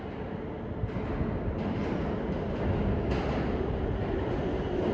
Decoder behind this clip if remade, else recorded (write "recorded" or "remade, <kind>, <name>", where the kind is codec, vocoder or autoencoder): recorded